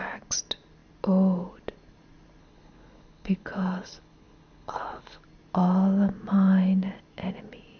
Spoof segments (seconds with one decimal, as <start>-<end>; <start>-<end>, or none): 2.4-5.2